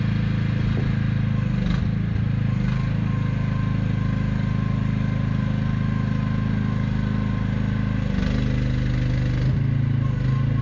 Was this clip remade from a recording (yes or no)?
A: no